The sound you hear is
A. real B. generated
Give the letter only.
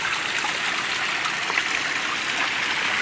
A